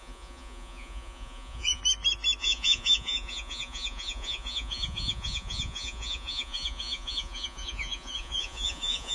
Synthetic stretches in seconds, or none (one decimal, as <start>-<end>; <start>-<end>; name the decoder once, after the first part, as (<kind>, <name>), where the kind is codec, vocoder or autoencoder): 0.0-1.8 (vocoder, Vocos); 2.4-9.1